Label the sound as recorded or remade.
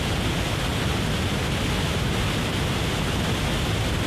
recorded